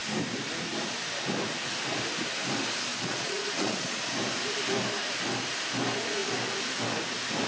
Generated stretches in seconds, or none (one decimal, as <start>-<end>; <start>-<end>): 2.9-4.0